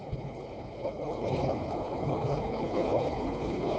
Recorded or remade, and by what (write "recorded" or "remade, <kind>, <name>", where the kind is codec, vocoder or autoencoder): remade, codec, HILCodec